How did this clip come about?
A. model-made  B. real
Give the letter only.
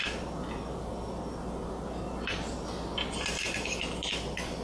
B